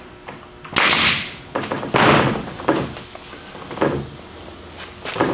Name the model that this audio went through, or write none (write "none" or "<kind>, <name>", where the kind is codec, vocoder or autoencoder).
none